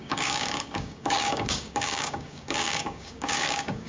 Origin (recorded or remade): remade